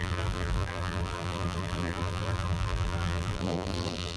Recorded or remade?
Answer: remade